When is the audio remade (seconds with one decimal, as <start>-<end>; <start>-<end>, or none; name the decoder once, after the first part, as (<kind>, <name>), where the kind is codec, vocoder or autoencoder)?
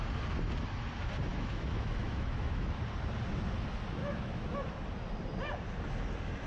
1.3-2.8 (autoencoder, DAC-VAE); 4.0-4.8